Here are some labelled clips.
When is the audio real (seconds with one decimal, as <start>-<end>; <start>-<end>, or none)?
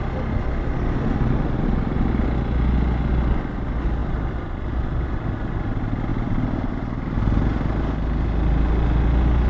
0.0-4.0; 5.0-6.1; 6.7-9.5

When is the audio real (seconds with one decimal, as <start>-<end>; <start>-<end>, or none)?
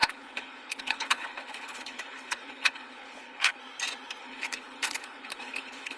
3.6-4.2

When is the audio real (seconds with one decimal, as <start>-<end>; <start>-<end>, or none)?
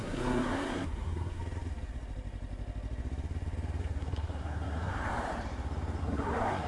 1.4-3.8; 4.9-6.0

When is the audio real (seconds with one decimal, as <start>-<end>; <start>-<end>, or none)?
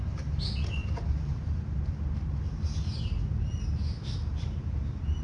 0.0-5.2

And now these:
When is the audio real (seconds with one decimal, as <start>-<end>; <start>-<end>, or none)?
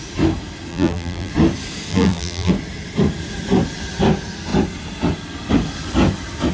0.0-0.7; 1.3-1.9; 2.5-6.5